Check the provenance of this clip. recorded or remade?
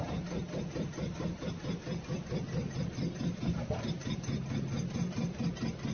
recorded